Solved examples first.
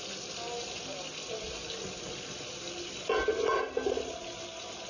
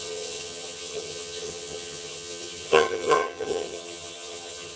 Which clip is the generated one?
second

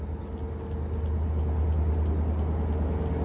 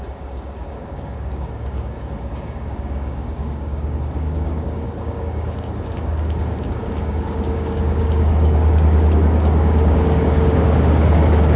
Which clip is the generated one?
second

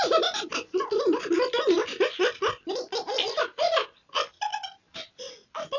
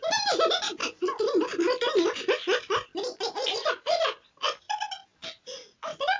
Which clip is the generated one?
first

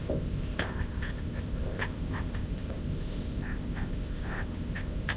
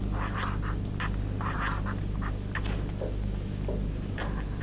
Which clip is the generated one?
first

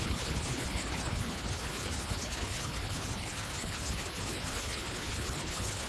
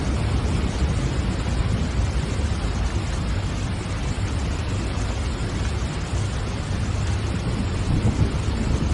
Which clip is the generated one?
first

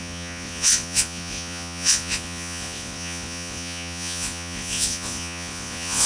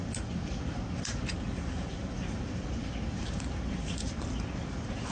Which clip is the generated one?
first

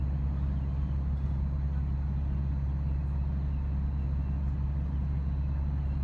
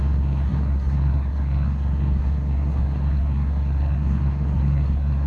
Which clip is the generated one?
second